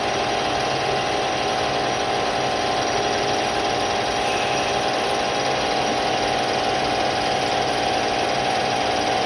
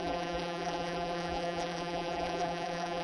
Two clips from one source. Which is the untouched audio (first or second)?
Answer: first